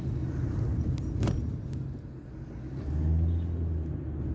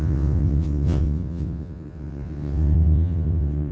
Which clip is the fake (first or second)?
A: second